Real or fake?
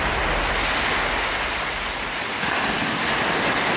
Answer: real